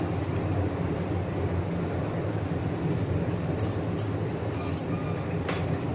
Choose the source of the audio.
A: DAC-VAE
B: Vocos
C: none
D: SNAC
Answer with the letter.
C